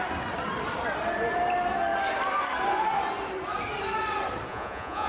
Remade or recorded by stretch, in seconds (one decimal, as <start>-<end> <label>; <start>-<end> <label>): 0.0-4.5 recorded; 4.5-5.1 remade